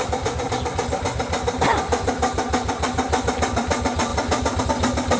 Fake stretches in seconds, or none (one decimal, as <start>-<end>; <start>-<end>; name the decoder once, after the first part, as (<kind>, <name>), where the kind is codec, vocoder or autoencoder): 0.0-5.2 (vocoder, BigVGAN v2)